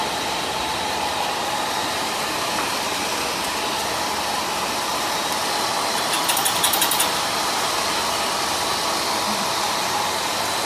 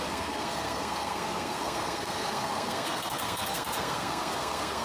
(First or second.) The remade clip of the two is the second